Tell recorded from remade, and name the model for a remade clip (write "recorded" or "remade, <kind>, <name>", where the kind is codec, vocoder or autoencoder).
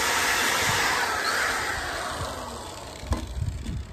recorded